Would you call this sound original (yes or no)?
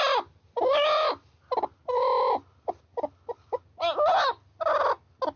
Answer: yes